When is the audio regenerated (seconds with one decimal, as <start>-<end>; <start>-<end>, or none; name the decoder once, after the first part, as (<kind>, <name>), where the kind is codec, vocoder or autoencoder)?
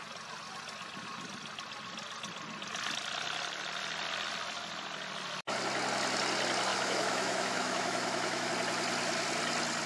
6.7-8.5 (autoencoder, DAC-VAE)